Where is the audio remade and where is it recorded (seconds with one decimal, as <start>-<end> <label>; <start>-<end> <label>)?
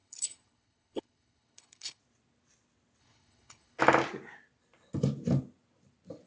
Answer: 0.0-2.0 remade; 2.0-3.0 recorded; 3.0-3.8 remade; 3.8-6.3 recorded